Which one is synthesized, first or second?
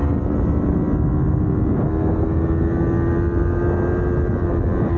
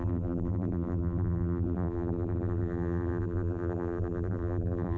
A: second